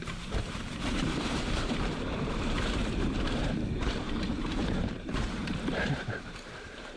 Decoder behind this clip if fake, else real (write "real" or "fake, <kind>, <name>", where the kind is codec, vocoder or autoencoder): fake, vocoder, BigVGAN v2